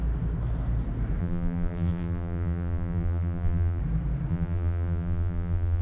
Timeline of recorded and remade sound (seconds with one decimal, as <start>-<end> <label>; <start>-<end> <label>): 0.0-1.2 recorded; 1.2-3.8 remade; 3.8-4.3 recorded; 4.3-5.8 remade